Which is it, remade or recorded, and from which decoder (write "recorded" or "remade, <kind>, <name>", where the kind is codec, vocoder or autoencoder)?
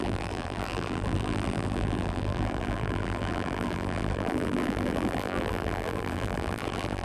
remade, vocoder, BigVGAN v2